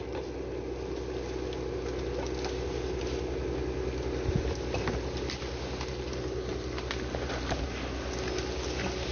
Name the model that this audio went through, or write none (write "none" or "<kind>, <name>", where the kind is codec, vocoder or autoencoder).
none